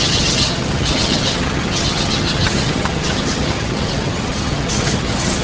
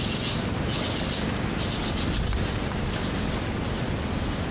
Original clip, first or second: second